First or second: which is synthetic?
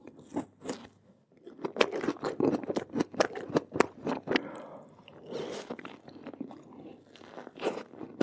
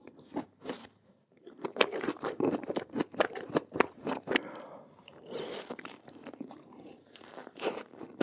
second